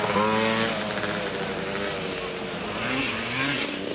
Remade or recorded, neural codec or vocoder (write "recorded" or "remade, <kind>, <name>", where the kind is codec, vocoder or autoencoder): recorded